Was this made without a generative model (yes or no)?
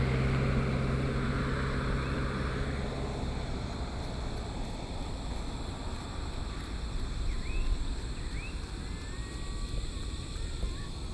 yes